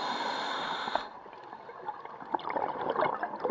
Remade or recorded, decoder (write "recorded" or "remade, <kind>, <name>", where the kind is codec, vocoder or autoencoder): recorded